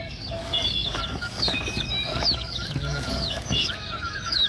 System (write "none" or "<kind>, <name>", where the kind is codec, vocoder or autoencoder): codec, DAC